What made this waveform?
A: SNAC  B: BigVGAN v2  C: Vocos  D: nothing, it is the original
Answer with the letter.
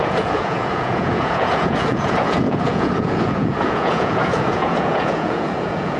C